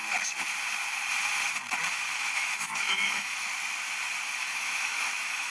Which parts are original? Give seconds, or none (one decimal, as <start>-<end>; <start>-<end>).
0.0-2.1; 3.5-4.4